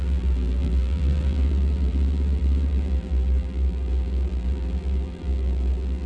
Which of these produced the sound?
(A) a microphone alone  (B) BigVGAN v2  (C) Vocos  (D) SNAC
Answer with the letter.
B